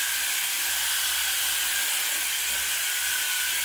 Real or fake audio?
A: real